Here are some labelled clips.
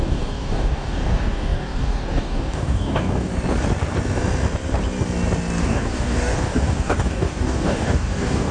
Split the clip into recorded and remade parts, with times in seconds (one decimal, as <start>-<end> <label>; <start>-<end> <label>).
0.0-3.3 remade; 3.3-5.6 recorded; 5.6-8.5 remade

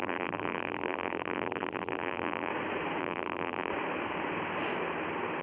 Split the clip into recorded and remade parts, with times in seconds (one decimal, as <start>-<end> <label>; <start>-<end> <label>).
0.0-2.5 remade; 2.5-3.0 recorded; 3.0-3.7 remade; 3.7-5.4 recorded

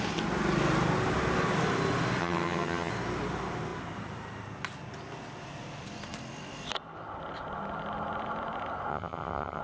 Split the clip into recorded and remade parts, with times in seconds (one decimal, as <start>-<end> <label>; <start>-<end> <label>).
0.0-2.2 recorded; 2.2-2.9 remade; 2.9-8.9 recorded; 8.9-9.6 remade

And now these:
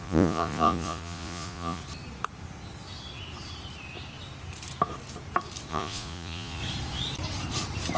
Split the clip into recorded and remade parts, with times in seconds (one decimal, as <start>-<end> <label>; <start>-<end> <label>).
0.0-1.8 remade; 1.8-5.7 recorded; 5.7-6.6 remade; 6.6-8.0 recorded